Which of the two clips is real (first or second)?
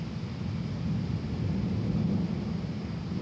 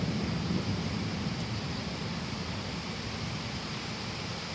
first